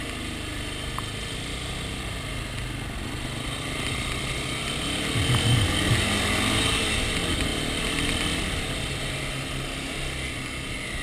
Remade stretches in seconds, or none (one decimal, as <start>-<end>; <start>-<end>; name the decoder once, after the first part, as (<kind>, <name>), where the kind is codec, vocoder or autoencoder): none